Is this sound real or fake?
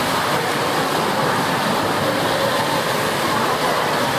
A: real